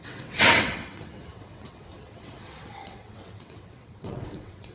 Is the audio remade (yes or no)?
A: yes